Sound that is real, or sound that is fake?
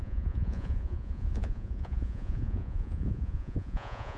fake